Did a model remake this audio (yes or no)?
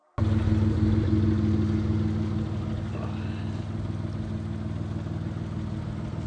no